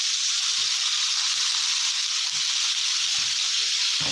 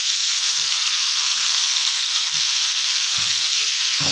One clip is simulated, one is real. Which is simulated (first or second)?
second